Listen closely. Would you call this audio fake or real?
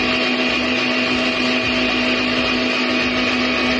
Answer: real